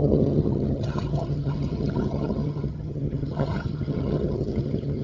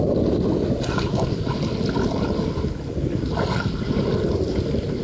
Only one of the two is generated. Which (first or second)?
first